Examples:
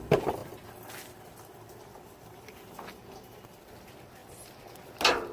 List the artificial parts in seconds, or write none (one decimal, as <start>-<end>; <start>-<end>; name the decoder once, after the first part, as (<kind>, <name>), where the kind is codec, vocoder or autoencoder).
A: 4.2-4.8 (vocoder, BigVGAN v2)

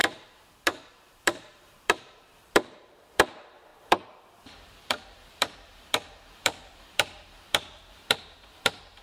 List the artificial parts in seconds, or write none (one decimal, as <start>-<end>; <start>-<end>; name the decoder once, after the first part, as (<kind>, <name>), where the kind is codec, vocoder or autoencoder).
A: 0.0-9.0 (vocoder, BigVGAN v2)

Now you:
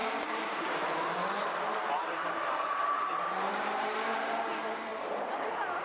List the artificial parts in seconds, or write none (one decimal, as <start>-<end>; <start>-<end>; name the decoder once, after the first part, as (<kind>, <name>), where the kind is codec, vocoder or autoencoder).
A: 0.0-5.8 (vocoder, BigVGAN v2)

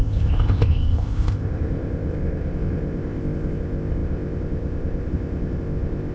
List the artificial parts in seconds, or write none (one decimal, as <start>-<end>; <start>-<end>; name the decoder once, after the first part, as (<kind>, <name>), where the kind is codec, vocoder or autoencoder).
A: 0.0-6.1 (codec, ZipCodec)

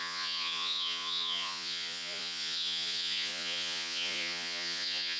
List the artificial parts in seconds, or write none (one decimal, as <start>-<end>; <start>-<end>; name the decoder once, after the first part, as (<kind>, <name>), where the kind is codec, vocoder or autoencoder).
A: 0.0-5.2 (vocoder, Vocos)